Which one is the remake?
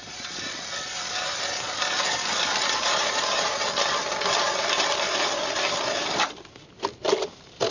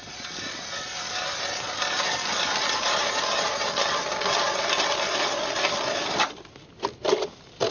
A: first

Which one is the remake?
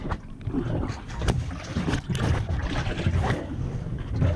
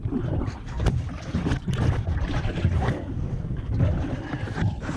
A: second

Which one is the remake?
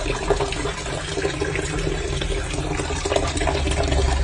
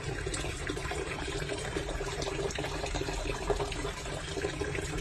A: second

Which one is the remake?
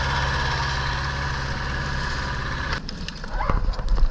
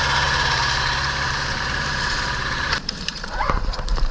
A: second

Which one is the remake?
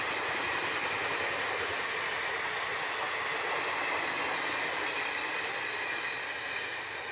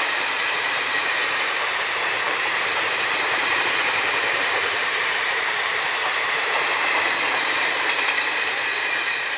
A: second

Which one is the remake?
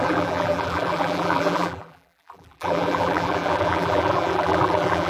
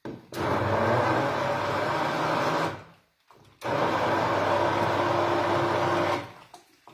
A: first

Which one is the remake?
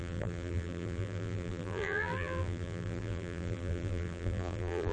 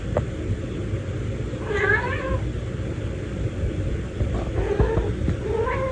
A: first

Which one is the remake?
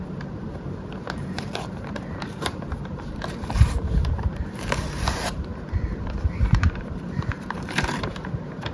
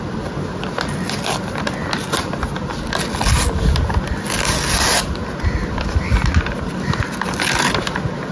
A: first